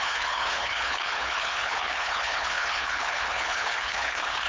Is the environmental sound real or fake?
fake